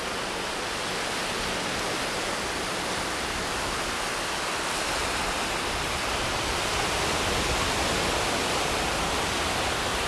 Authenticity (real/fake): real